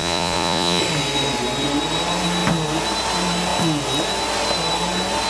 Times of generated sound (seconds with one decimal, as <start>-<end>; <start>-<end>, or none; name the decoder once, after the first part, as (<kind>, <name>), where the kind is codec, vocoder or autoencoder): 0.0-0.8 (vocoder, Vocos)